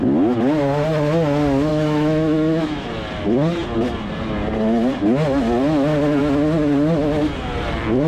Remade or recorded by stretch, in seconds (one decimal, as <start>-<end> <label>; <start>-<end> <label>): 0.0-1.7 recorded; 1.7-2.9 remade; 2.9-8.1 recorded